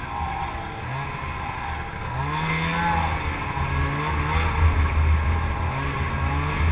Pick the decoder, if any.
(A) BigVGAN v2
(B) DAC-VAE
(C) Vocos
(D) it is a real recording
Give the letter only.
D